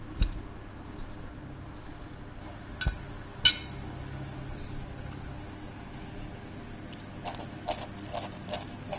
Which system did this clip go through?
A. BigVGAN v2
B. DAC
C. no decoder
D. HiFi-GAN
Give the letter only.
C